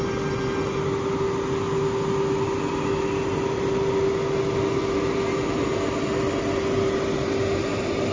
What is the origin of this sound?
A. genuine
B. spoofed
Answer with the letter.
A